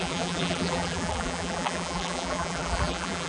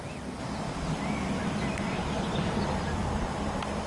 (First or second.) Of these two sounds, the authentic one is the second